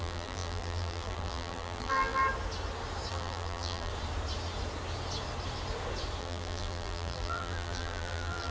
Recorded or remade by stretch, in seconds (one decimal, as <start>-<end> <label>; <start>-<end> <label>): 0.0-2.2 remade; 2.2-3.1 recorded; 3.1-3.9 remade; 3.9-6.2 recorded; 6.2-8.5 remade